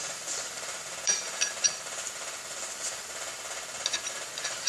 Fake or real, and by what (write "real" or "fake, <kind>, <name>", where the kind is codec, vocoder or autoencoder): fake, vocoder, BigVGAN v2